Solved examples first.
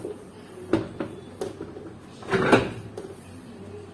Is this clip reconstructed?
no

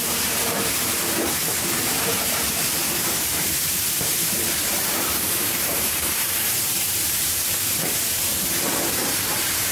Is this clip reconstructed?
yes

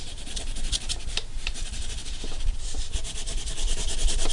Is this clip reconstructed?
yes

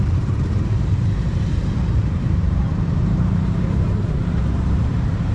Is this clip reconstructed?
yes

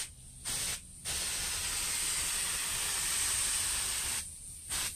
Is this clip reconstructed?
no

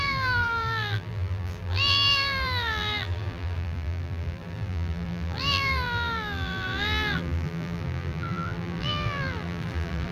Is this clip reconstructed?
yes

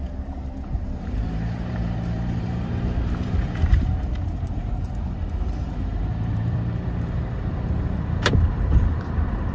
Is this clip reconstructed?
yes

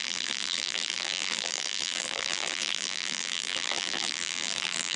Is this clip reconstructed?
yes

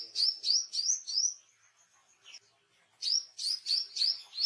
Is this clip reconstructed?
no